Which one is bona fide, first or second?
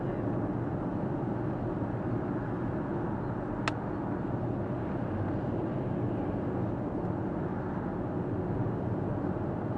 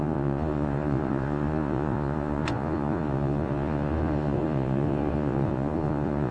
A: first